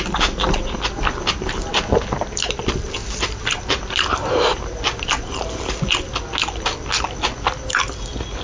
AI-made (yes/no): no